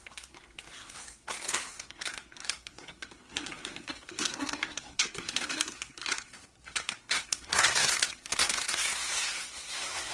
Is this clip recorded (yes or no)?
no